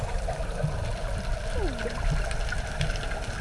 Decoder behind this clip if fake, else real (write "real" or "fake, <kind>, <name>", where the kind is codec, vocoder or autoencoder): real